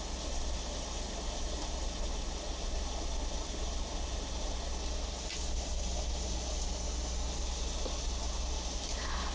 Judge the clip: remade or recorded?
recorded